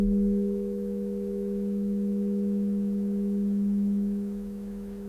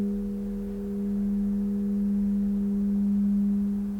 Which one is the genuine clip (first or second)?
second